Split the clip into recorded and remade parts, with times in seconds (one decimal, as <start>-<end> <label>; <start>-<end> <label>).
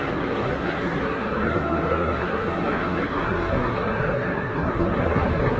0.0-5.6 remade